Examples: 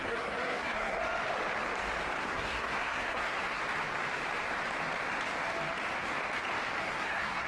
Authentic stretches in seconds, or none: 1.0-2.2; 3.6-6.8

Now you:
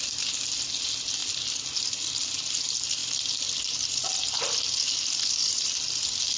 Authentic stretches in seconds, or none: 0.0-6.4

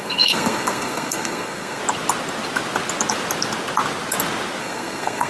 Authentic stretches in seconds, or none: 1.8-4.6

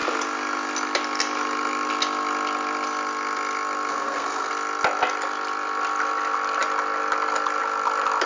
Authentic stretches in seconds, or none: 0.0-3.9; 4.5-8.3

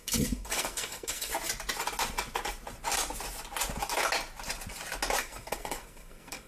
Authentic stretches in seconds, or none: 1.3-5.2

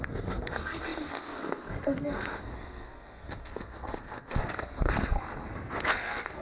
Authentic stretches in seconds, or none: none

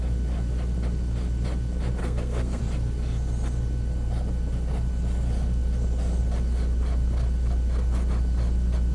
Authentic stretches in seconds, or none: 0.0-2.0; 2.6-8.9